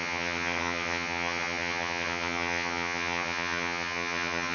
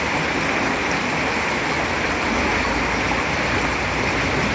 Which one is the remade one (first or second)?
first